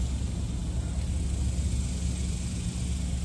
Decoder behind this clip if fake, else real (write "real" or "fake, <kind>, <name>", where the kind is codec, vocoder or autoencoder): real